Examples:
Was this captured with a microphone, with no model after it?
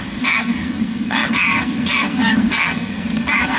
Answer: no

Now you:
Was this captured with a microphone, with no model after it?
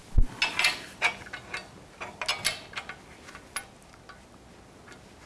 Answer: yes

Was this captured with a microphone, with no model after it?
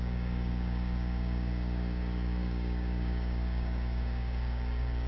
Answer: no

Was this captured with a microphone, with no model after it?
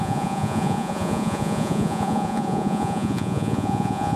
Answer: no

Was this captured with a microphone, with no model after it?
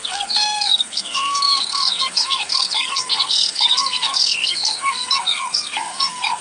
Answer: no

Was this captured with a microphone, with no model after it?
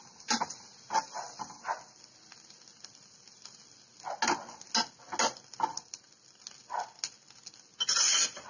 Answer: yes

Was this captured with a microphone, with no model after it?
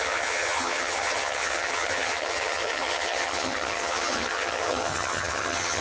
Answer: no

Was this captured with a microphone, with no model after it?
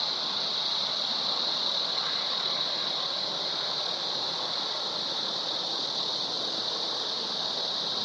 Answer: yes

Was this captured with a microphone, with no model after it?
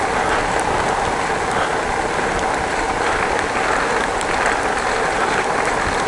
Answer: yes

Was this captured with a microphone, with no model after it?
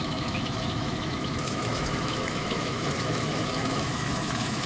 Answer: no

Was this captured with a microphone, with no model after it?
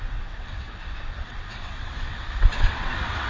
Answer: no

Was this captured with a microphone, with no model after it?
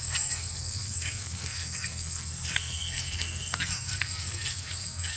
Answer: no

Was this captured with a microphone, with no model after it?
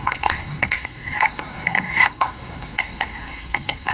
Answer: no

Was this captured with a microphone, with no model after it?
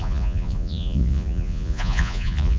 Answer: no